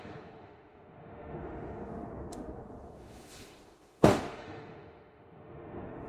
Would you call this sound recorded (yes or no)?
no